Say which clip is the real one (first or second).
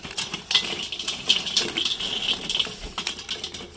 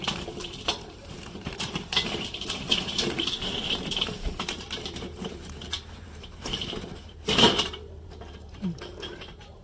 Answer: first